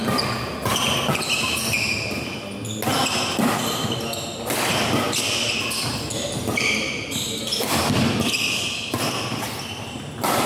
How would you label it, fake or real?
real